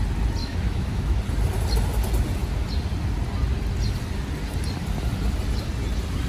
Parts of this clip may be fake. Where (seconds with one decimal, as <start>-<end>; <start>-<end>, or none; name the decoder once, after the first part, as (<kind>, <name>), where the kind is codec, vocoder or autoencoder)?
0.4-1.2 (autoencoder, DAC-VAE)